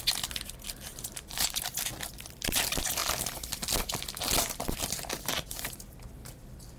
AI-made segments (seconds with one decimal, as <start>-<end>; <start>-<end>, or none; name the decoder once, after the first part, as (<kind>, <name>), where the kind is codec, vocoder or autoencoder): none